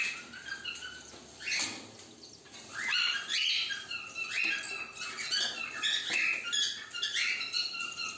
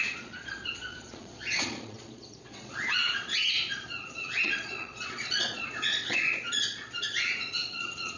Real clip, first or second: first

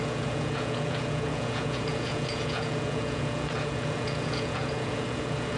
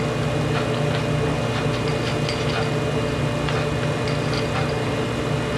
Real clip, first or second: second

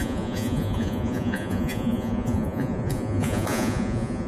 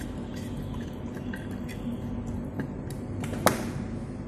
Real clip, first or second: second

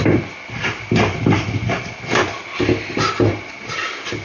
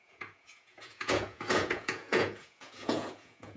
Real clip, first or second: first